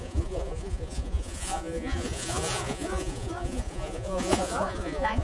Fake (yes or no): yes